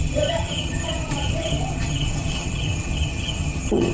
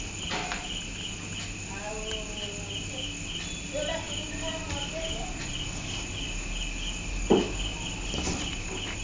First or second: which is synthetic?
first